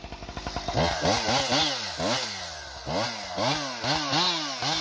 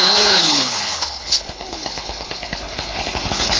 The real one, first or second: first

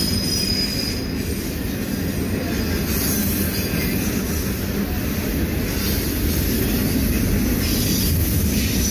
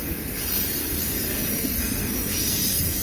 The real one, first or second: first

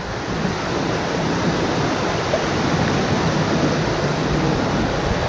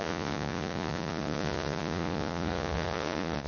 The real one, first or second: first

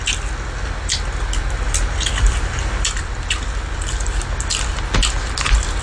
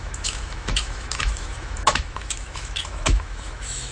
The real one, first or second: first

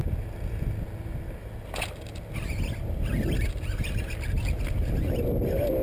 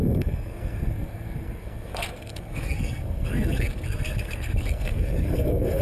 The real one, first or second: first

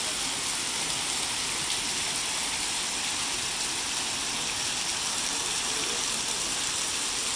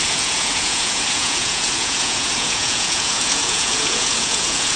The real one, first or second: first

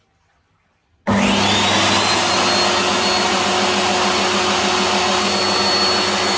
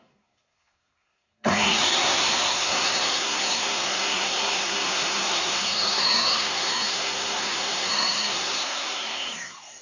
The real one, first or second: first